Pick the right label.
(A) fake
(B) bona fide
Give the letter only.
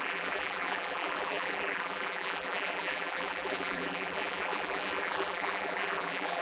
A